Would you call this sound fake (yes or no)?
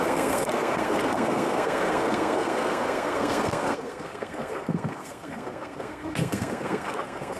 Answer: yes